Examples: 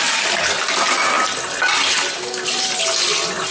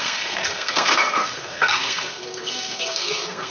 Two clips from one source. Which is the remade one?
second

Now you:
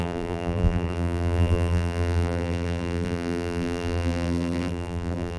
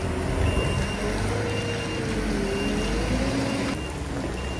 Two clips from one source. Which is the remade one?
first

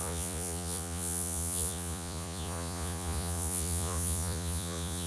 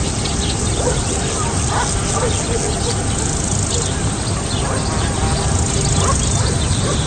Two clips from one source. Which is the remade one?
first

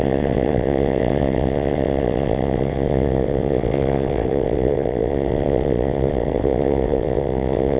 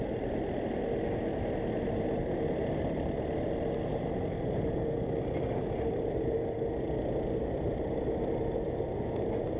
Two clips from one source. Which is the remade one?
first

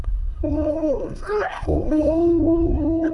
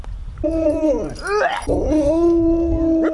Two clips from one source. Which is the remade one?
first